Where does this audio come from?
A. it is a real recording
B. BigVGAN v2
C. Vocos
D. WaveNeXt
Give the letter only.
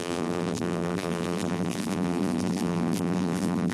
B